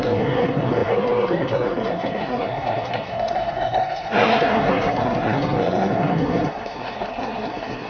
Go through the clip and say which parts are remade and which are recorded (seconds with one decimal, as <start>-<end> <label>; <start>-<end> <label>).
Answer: 0.0-7.9 remade

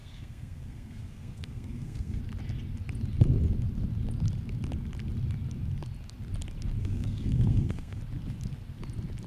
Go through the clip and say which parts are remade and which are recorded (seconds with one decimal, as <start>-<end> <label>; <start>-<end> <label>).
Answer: 0.0-2.2 remade; 2.2-6.8 recorded; 6.8-8.0 remade; 8.0-9.3 recorded

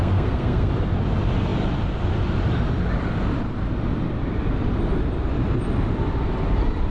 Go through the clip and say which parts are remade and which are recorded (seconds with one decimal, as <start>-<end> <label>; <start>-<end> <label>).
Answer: 0.0-0.7 remade; 0.7-6.9 recorded

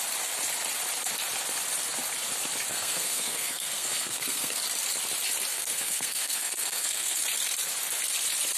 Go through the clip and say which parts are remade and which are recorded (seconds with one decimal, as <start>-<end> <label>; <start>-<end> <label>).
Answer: 0.0-2.7 recorded; 2.7-4.6 remade; 4.6-5.5 recorded; 5.5-7.2 remade; 7.2-8.6 recorded

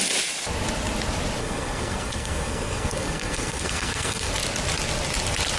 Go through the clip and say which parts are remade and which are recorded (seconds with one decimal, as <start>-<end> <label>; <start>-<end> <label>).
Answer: 0.0-1.4 recorded; 1.4-4.3 remade; 4.3-5.6 recorded

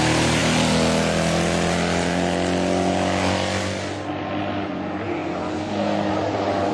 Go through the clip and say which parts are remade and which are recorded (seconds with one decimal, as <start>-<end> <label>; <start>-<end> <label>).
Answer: 0.0-6.7 recorded